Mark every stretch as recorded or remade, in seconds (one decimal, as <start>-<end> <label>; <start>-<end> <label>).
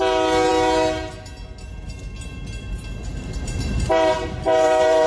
0.0-3.0 recorded; 3.0-5.1 remade